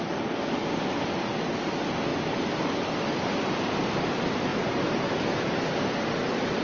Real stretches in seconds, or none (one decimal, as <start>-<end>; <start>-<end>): 0.0-6.6